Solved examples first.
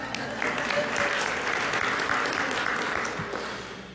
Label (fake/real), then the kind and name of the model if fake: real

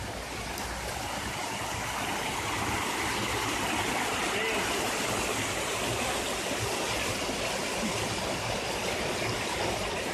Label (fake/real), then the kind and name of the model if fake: real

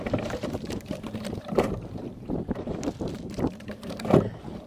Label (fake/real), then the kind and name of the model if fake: fake, vocoder, BigVGAN v2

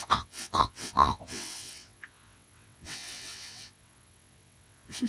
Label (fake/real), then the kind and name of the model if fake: fake, vocoder, WaveNeXt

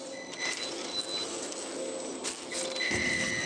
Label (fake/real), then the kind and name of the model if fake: real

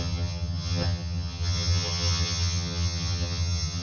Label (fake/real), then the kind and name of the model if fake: fake, vocoder, HiFi-GAN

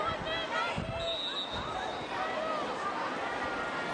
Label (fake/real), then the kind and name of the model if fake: real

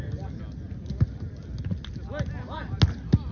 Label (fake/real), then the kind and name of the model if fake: real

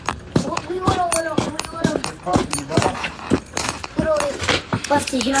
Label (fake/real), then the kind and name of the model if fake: fake, vocoder, BigVGAN v2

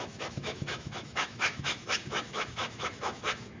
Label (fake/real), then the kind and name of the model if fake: fake, autoencoder, DAC-VAE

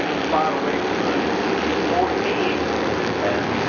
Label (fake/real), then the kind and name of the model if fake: real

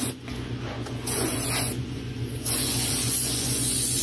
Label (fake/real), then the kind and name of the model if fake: fake, vocoder, Vocos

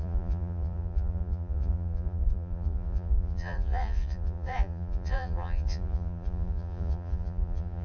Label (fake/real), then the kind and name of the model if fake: fake, vocoder, Vocos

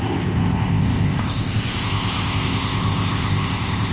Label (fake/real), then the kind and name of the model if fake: fake, codec, ZipCodec